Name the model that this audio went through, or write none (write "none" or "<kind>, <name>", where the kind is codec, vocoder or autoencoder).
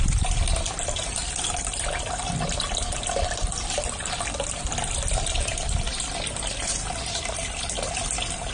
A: none